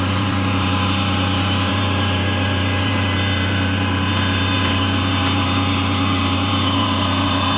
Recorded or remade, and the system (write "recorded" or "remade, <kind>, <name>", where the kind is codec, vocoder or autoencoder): remade, vocoder, BigVGAN v2